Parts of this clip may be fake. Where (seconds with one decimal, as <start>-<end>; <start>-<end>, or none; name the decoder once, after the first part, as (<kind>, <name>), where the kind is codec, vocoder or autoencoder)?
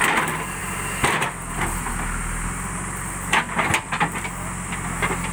none